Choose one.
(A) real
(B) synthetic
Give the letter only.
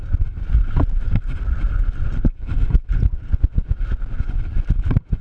A